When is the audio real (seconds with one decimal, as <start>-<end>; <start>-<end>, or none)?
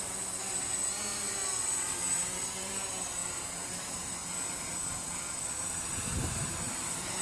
0.8-1.9; 4.2-5.5